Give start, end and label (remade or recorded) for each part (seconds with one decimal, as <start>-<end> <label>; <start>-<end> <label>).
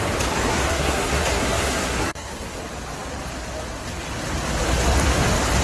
0.0-0.5 recorded; 0.5-2.6 remade; 2.6-5.6 recorded